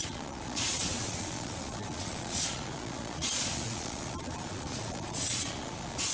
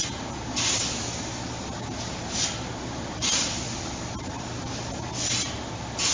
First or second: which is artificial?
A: first